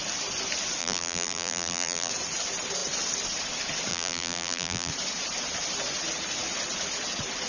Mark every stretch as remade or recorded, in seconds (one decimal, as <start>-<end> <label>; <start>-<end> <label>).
0.0-0.8 recorded; 0.8-2.1 remade; 2.1-3.9 recorded; 3.9-4.9 remade; 4.9-7.5 recorded